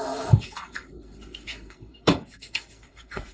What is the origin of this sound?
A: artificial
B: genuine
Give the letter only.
A